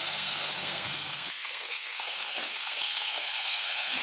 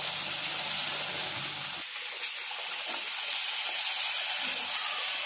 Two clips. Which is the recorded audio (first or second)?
second